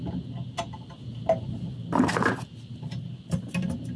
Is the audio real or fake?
real